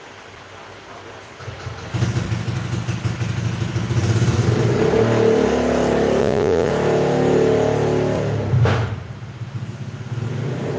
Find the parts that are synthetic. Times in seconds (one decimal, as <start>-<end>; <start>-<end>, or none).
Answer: 6.2-6.7